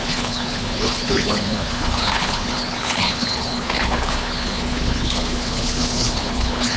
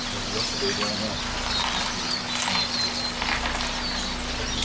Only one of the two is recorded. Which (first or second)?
second